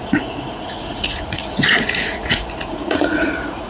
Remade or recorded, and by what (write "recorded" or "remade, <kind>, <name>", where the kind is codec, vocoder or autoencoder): remade, vocoder, Vocos